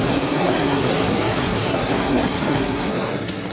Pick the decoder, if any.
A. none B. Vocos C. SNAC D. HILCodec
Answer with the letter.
C